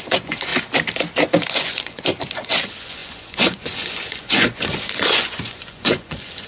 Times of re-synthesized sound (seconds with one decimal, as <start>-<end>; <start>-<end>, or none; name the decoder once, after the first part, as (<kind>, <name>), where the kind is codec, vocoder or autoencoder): 0.0-0.5 (vocoder, Vocos); 1.5-6.5

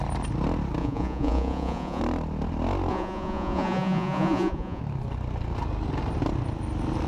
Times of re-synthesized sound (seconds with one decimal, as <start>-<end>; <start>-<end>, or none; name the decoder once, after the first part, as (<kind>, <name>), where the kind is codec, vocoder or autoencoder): 0.8-2.0 (vocoder, Vocos); 2.9-4.8

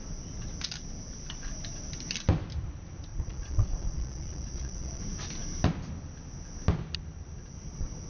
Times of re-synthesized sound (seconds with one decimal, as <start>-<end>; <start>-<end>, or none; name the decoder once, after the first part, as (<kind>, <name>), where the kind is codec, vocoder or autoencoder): 3.1-5.0 (vocoder, Vocos)

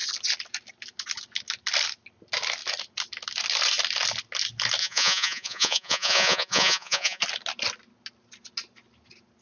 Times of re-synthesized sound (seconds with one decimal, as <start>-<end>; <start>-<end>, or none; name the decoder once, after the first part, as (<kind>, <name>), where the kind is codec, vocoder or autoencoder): 4.8-7.2 (vocoder, Vocos)

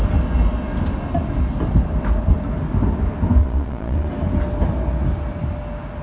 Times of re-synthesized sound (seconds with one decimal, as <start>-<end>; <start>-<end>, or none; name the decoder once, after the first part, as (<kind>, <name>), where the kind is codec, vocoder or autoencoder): 3.4-4.1 (vocoder, Vocos)

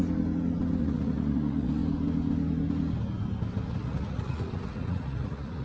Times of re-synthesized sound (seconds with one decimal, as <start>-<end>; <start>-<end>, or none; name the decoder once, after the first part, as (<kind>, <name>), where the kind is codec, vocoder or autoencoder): 0.8-1.8 (vocoder, Vocos); 3.7-5.6

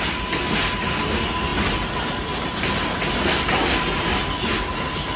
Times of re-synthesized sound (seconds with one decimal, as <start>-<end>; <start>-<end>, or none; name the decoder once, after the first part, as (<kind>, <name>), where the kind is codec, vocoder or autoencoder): none

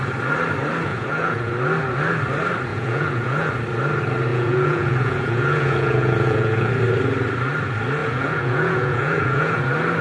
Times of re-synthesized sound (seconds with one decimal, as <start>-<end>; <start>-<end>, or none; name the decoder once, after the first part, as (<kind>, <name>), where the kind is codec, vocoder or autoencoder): 0.9-1.5 (vocoder, Vocos); 2.7-3.5; 4.3-6.7; 8.0-9.6